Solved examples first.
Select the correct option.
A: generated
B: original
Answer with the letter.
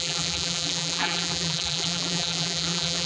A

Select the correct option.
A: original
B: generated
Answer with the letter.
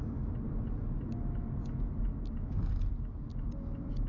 A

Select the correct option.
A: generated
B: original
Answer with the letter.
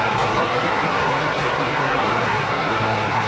A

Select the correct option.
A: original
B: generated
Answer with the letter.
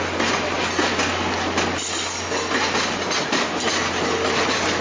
A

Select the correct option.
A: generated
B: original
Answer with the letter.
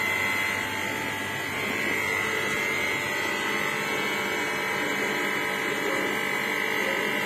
B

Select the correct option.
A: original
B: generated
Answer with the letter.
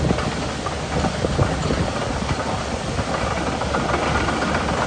A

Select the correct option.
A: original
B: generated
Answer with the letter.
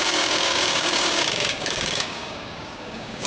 B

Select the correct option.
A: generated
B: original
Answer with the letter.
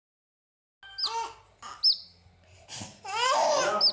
B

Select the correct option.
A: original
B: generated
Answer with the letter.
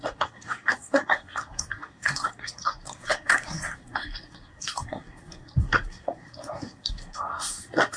B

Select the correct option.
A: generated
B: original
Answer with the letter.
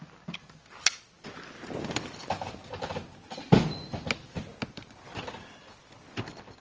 B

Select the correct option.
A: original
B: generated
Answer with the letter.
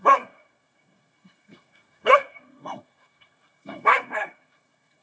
B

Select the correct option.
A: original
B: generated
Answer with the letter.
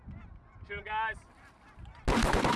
A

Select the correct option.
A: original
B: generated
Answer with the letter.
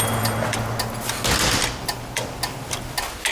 A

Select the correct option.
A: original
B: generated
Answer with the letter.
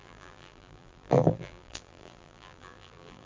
B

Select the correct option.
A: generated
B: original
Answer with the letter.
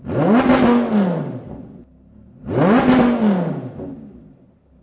B